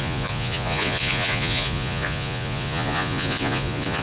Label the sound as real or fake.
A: fake